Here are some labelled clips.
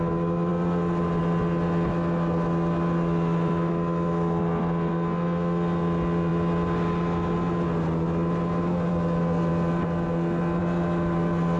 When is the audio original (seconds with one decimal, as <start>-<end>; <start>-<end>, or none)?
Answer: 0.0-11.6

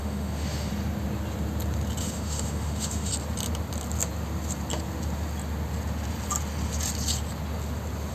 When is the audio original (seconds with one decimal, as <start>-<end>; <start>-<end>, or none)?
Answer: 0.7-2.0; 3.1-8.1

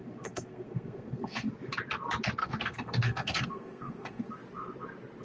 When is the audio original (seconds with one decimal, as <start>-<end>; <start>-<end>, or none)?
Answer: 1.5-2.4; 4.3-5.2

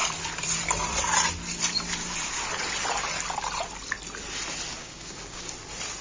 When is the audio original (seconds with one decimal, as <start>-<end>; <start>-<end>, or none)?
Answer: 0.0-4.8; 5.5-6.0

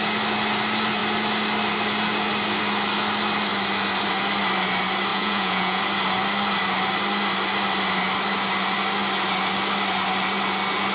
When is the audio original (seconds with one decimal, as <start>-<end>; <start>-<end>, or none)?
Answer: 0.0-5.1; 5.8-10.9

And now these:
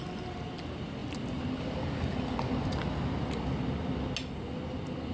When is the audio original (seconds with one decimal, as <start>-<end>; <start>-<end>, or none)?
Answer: 0.0-5.1